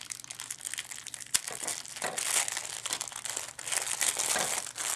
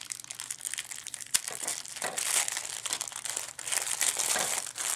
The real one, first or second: first